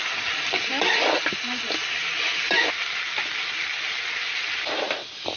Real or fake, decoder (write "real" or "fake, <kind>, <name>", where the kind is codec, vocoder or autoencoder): real